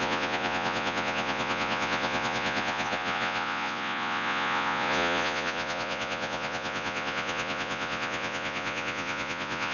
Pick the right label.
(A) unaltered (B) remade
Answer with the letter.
B